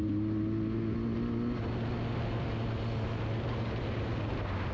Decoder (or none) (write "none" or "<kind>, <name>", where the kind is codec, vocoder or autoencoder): none